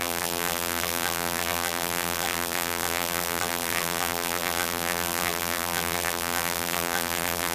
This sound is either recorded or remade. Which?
remade